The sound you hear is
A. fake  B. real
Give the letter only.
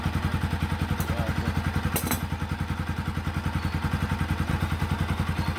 B